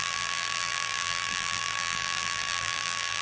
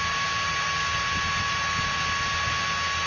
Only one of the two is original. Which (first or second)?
second